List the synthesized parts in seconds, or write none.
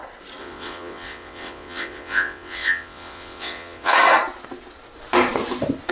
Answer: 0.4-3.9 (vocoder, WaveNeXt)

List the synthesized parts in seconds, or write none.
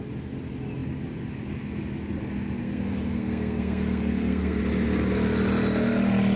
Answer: 2.6-4.6 (codec, SNAC)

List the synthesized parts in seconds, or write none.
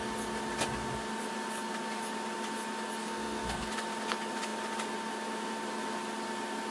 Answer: 3.0-3.7 (codec, SNAC)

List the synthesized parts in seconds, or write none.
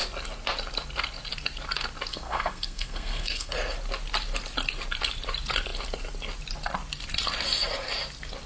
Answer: 2.1-3.5 (codec, SNAC)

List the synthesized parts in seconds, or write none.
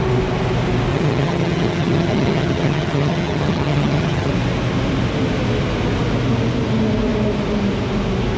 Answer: 0.9-4.3 (vocoder, HiFi-GAN)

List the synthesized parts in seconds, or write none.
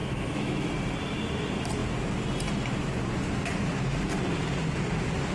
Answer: 0.0-0.7 (autoencoder, DAC-VAE)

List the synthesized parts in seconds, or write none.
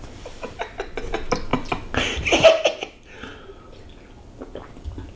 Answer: none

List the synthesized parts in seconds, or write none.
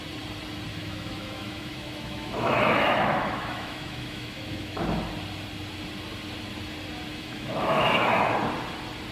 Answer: 0.7-4.8 (autoencoder, DAC-VAE); 7.1-8.3